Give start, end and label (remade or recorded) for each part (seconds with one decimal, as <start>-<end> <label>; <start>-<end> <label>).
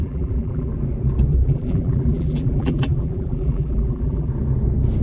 0.0-0.7 remade; 0.7-1.3 recorded; 1.3-4.3 remade; 4.3-5.0 recorded